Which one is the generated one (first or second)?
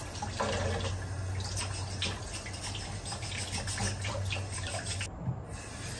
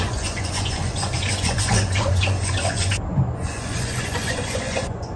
second